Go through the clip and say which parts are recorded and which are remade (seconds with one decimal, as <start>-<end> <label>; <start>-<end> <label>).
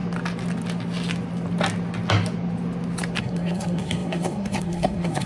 0.0-3.2 recorded; 3.2-5.3 remade